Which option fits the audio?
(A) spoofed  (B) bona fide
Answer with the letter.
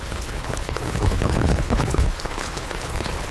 A